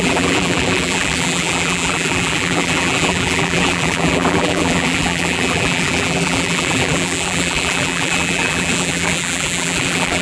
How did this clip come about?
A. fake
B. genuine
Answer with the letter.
A